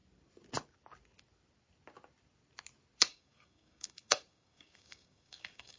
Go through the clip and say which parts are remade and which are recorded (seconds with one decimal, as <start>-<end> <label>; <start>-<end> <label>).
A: 0.0-3.1 recorded; 3.1-5.8 remade